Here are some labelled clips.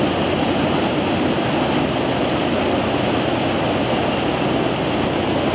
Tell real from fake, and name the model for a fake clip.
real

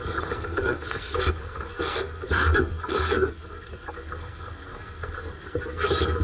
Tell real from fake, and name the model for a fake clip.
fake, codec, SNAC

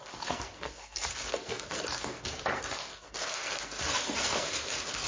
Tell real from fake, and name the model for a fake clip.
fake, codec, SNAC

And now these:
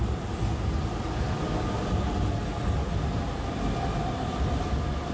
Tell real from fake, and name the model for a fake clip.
real